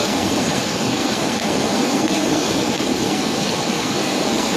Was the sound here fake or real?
fake